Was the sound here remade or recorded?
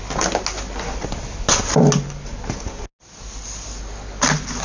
recorded